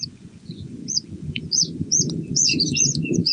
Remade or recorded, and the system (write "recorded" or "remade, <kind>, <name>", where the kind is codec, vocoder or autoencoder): remade, vocoder, Vocos